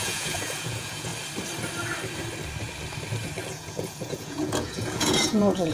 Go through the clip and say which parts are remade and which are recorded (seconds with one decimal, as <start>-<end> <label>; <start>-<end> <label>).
0.0-1.1 remade; 1.1-3.5 recorded; 3.5-5.7 remade